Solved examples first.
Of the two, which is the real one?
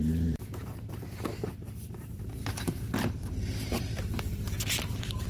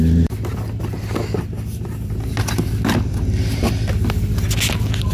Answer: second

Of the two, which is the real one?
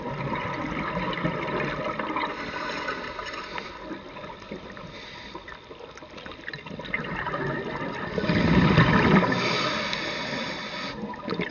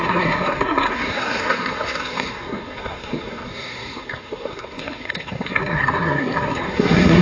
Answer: first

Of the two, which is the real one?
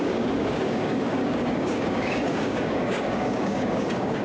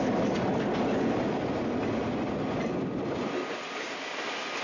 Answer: second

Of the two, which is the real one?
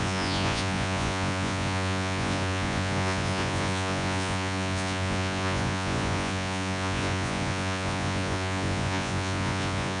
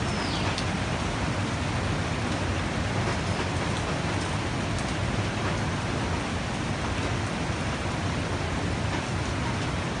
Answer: second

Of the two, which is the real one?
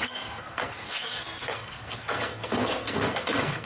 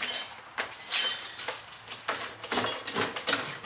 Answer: second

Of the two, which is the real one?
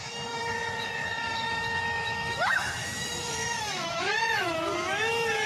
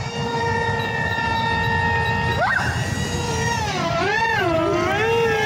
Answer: second